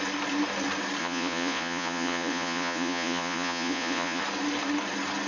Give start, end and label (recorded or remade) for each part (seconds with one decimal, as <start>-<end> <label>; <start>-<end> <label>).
0.0-1.0 recorded; 1.0-4.2 remade; 4.2-5.3 recorded